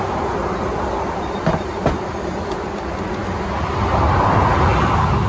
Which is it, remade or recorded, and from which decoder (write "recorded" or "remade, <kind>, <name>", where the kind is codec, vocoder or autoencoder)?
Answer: recorded